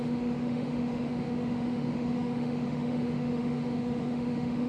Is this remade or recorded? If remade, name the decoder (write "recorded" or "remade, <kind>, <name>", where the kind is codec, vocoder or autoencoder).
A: remade, autoencoder, DAC-VAE